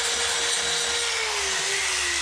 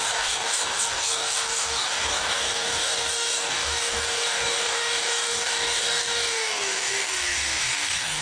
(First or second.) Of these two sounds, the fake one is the second